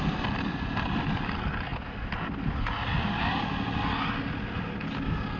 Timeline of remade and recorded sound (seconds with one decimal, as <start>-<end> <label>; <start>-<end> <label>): 0.0-5.4 recorded